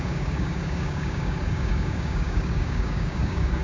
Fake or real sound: fake